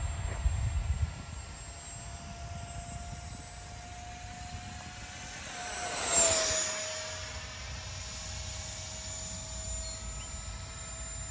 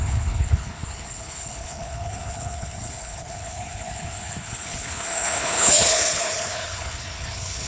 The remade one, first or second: second